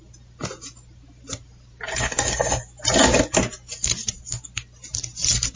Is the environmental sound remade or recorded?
recorded